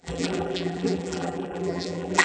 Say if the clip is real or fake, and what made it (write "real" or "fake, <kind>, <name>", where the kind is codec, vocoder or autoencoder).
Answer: fake, vocoder, BigVGAN v2